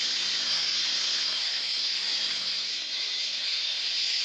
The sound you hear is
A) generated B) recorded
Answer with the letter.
A